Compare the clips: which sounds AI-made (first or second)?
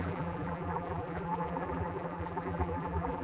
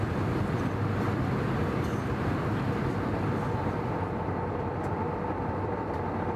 first